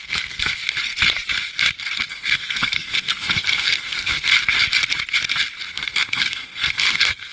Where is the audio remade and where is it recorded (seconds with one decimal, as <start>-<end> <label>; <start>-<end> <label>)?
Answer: 0.0-0.6 remade; 0.6-2.1 recorded; 2.1-4.3 remade; 4.3-5.7 recorded; 5.7-7.3 remade